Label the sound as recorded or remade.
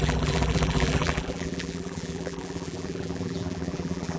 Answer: remade